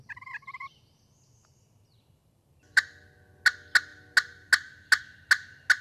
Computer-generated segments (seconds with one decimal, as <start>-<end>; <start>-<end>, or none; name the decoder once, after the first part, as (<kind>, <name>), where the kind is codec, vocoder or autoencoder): 2.2-2.8 (vocoder, BigVGAN v2)